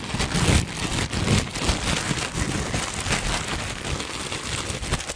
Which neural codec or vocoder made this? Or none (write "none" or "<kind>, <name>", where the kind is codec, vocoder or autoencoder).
none